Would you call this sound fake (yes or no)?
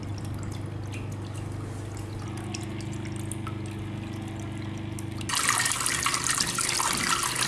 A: no